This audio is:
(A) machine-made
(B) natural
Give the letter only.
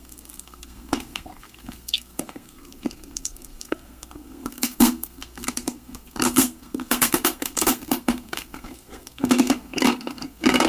A